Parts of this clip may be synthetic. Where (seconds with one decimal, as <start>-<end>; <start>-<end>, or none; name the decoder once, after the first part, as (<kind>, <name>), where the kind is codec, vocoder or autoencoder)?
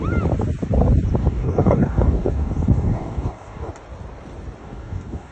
1.2-3.7 (codec, DAC); 4.6-5.3